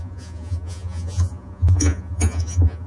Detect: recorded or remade remade